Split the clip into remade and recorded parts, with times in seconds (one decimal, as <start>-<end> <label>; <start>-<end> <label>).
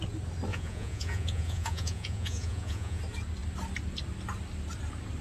0.0-0.5 recorded; 0.5-3.0 remade; 3.0-5.2 recorded